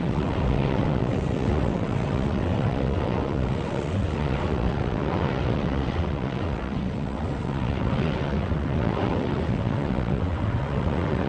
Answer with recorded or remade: remade